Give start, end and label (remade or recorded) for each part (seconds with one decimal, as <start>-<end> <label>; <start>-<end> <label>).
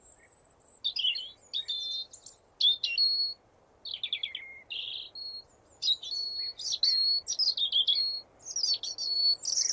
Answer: 0.0-9.7 recorded